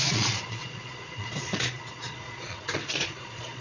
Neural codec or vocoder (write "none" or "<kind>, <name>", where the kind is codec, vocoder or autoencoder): vocoder, Vocos